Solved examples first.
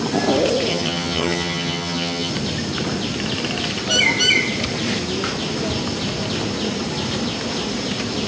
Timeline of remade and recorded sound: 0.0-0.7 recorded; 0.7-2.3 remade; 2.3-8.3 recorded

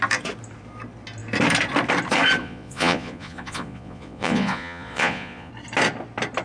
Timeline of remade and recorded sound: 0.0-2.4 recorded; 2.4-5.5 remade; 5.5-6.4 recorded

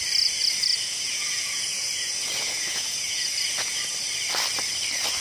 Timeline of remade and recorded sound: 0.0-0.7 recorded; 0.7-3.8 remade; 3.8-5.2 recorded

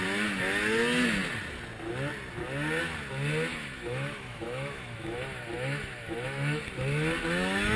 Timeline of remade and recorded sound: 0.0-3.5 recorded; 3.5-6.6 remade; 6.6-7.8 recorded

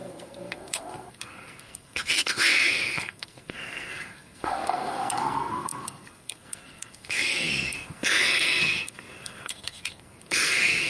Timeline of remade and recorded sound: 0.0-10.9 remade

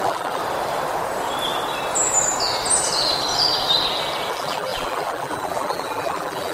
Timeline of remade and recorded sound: 0.0-0.4 remade; 0.4-4.3 recorded; 4.3-6.5 remade